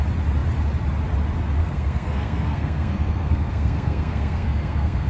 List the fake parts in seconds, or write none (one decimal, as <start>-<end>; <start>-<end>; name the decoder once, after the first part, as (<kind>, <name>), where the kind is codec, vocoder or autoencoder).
1.6-5.1 (codec, SNAC)